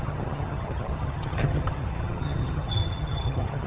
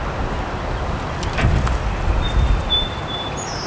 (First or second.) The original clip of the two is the second